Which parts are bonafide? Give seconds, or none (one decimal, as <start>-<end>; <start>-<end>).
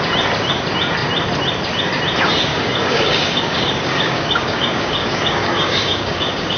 0.0-2.5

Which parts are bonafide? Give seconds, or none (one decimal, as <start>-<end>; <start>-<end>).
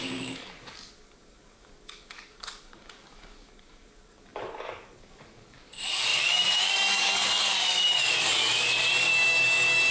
none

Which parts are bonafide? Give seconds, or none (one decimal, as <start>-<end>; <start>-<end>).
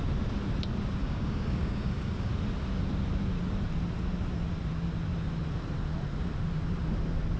0.0-1.0; 2.3-7.4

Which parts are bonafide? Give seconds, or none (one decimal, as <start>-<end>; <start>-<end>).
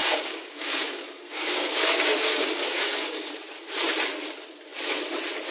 3.3-5.5